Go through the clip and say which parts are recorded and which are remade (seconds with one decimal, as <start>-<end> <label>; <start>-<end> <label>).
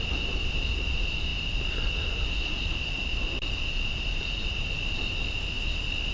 0.0-6.1 recorded